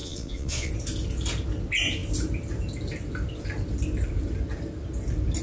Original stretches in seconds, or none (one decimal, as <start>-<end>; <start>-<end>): 0.7-5.4

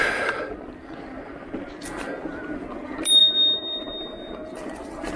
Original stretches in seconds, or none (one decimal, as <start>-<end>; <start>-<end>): 0.0-5.2

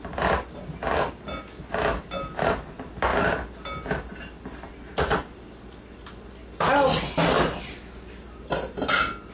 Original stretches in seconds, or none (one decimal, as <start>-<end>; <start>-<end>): 0.0-9.3

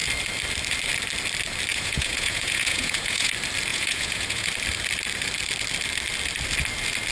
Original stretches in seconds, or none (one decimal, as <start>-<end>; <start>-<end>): 0.0-1.7; 3.3-3.7; 4.5-7.1

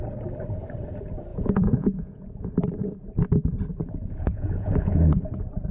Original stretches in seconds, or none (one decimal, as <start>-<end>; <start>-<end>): 0.0-1.3; 2.5-3.8; 5.0-5.7

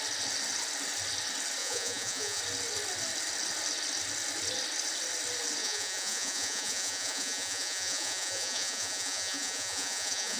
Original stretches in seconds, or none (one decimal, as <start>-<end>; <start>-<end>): 0.0-1.6; 2.4-5.6

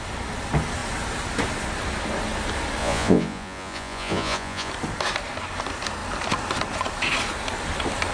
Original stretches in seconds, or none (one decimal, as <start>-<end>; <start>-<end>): 0.0-2.8; 4.7-8.1